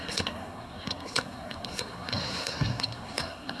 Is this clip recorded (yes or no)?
no